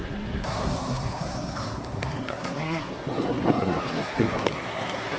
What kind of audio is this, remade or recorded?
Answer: remade